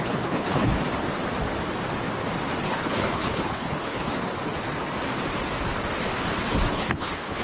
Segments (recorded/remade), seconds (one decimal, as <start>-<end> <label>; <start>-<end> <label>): 0.0-0.7 remade; 0.7-2.7 recorded; 2.7-4.1 remade; 4.1-6.7 recorded; 6.7-7.4 remade